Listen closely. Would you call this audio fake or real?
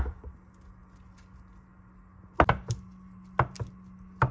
real